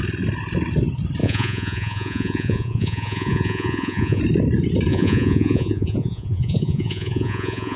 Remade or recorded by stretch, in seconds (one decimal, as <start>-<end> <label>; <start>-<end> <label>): 0.0-1.2 recorded; 1.2-4.2 remade; 4.2-4.9 recorded; 4.9-7.8 remade

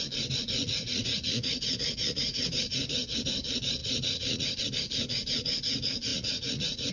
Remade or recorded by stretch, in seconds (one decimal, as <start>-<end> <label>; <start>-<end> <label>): 0.0-0.6 recorded; 0.6-2.4 remade; 2.4-3.8 recorded; 3.8-4.6 remade; 4.6-6.1 recorded; 6.1-6.9 remade

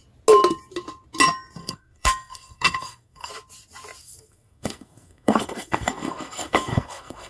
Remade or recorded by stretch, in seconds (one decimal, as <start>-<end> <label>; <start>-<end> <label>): 0.0-1.6 recorded; 1.6-3.3 remade; 3.3-4.0 recorded; 4.0-7.3 remade

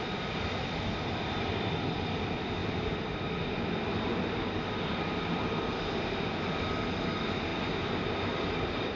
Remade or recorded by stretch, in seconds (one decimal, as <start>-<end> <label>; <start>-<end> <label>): 0.0-9.0 recorded

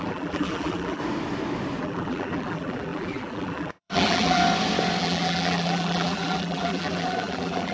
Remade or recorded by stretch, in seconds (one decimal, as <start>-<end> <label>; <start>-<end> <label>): 0.0-1.0 remade; 1.0-1.8 recorded; 1.8-4.4 remade; 4.4-5.0 recorded; 5.0-7.7 remade

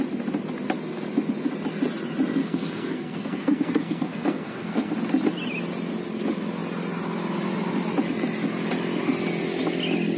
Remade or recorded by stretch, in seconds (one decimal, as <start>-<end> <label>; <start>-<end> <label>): 0.0-2.4 recorded; 2.4-4.9 remade; 4.9-10.2 recorded

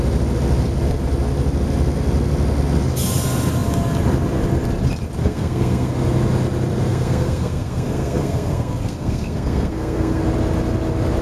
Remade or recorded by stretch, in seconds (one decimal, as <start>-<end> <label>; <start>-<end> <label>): 0.0-5.2 recorded; 5.2-5.9 remade; 5.9-6.9 recorded; 6.9-10.2 remade; 10.2-11.2 recorded